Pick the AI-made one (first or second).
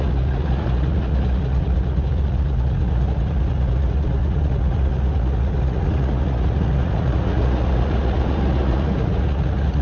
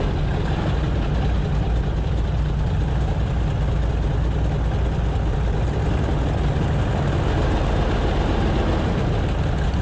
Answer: first